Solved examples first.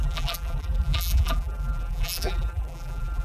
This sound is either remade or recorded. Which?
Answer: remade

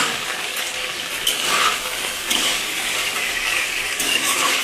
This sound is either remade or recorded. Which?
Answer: remade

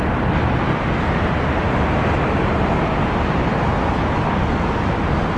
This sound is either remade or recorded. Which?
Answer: recorded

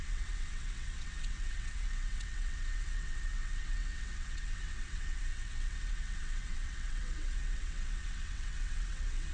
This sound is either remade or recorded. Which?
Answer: remade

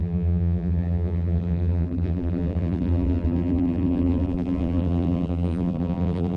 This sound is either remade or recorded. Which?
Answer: remade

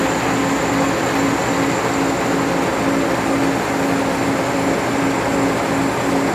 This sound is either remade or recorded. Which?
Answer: recorded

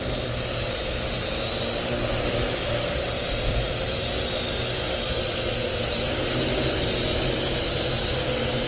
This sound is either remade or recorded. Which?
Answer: recorded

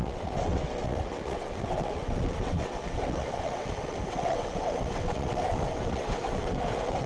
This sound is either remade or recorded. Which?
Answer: remade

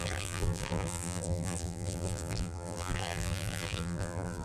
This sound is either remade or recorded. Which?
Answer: remade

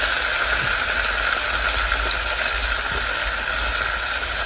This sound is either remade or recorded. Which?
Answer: recorded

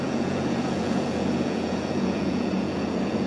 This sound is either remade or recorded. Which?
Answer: remade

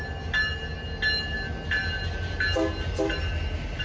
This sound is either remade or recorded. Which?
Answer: recorded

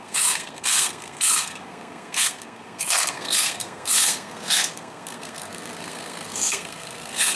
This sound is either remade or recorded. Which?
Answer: remade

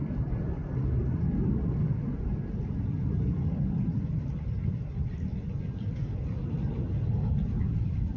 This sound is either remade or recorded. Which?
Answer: recorded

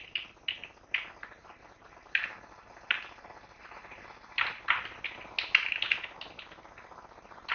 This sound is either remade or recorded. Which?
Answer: recorded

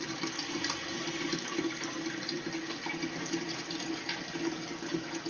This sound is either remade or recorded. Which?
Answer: recorded